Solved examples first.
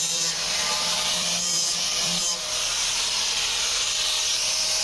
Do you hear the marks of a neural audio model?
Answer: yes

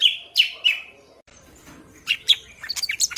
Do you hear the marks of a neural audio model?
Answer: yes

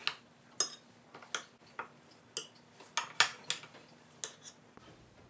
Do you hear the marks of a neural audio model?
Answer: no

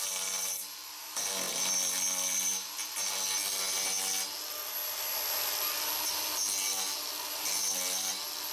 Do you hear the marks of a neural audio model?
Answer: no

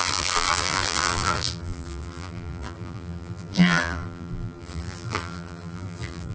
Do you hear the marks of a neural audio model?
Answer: yes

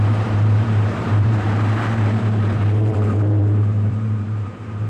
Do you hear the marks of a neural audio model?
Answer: yes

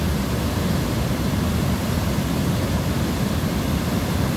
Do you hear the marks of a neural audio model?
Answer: no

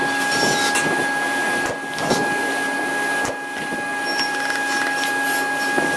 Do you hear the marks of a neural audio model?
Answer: no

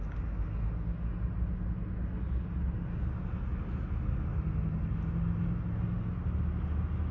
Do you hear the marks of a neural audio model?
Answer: no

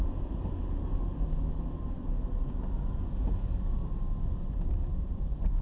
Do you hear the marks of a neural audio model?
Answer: no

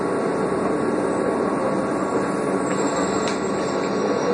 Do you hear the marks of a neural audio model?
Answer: no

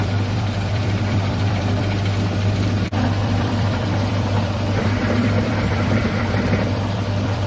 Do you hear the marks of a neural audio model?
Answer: yes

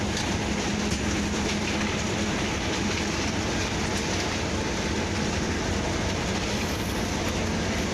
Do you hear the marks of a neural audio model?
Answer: no